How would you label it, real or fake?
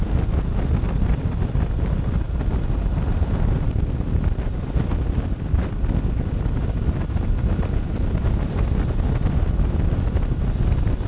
real